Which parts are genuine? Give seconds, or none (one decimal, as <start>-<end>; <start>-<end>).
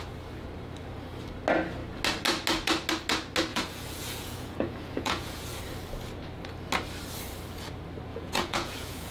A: 0.0-3.5; 5.6-8.1